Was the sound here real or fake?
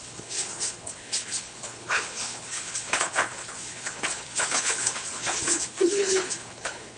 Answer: fake